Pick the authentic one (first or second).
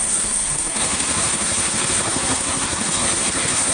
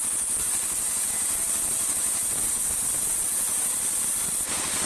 second